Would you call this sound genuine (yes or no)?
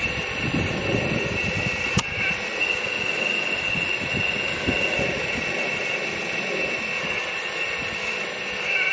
yes